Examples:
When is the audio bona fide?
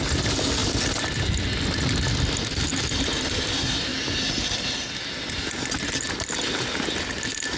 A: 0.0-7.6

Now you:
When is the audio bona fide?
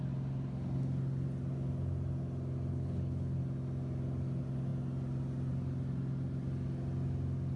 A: 0.0-2.7; 3.4-7.6